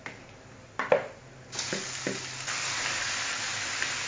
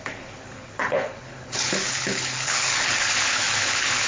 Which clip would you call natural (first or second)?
first